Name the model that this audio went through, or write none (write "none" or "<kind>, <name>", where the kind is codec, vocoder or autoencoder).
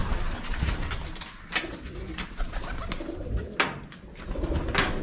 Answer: none